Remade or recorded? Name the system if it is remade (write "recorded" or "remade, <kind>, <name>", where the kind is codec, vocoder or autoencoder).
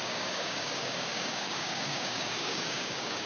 remade, codec, DAC